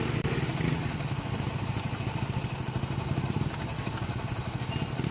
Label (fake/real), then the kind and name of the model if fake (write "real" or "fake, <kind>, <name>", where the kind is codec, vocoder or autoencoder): real